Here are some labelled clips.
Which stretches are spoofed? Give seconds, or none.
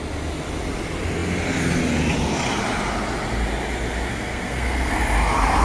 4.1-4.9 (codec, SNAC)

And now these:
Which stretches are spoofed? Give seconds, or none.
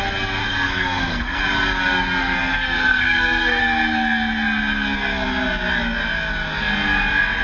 0.4-1.4 (codec, SNAC); 2.2-3.6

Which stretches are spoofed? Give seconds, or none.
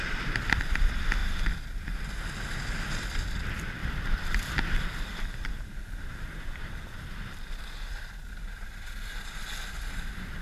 3.8-6.7 (vocoder, BigVGAN v2)